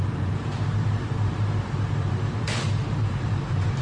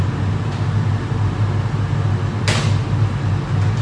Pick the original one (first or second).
second